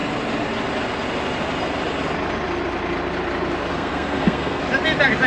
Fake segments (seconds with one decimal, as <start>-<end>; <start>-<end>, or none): 3.7-4.6